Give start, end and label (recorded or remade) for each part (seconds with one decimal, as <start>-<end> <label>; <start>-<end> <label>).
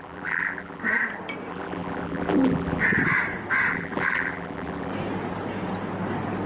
0.0-0.8 remade; 0.8-1.5 recorded; 1.5-2.8 remade; 2.8-3.7 recorded; 3.7-4.9 remade; 4.9-6.5 recorded